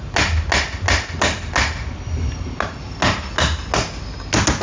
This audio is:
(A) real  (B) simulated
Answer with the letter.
A